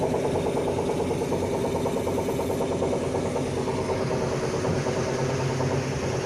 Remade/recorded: recorded